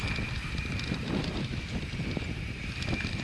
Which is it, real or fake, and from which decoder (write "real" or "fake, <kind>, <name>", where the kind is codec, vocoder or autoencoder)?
real